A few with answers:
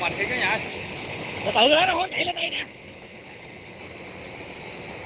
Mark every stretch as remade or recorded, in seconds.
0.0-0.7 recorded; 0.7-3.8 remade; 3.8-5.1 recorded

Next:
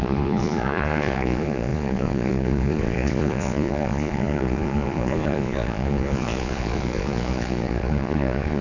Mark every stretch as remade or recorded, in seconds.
0.0-8.6 remade